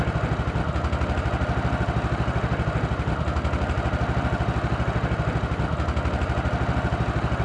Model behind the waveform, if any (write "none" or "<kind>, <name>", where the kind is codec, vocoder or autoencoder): none